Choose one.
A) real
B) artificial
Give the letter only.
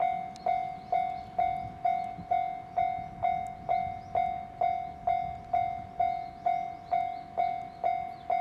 A